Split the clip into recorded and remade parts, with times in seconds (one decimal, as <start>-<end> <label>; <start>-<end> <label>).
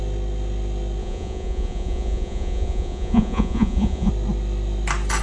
0.0-1.0 recorded; 1.0-4.1 remade; 4.1-5.2 recorded